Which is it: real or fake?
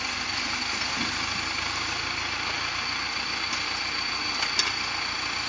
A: real